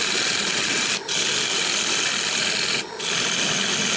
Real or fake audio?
real